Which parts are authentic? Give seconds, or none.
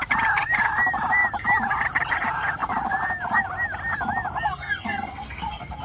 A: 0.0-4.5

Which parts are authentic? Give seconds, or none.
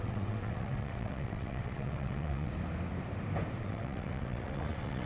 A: 2.5-3.6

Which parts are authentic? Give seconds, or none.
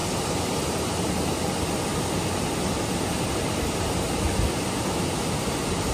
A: 0.0-5.9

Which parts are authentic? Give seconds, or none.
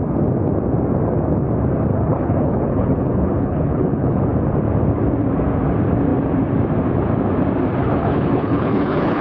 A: 0.0-1.9; 4.2-7.8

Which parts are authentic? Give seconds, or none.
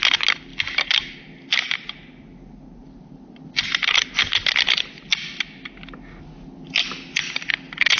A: 0.0-8.0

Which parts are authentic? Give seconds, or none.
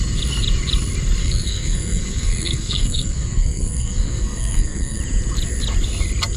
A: 0.0-1.2; 5.0-6.4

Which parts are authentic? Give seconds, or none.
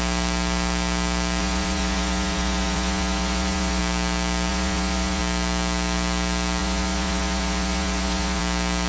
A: 0.0-1.4; 3.8-4.5; 5.2-6.6; 8.4-8.9